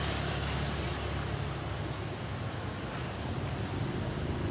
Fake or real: real